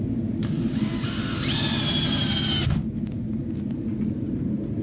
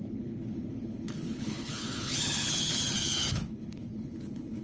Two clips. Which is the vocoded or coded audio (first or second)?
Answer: second